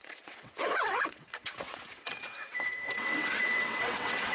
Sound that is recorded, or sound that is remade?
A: remade